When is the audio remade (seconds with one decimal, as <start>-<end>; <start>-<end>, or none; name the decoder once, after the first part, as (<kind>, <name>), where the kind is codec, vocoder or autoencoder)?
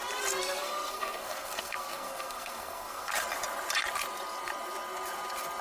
0.4-3.1 (codec, SNAC)